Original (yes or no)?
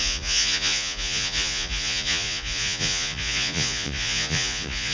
no